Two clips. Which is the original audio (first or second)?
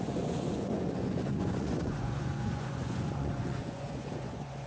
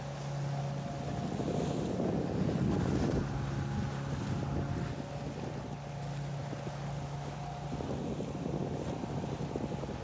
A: second